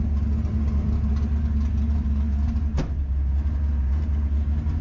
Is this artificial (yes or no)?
no